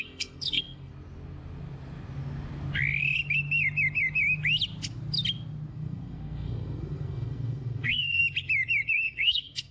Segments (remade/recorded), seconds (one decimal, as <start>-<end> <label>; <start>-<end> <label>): 0.0-0.9 remade; 0.9-5.7 recorded; 5.7-8.2 remade; 8.2-8.9 recorded; 8.9-9.7 remade